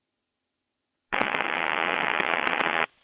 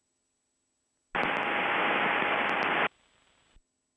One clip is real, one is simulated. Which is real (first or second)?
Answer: second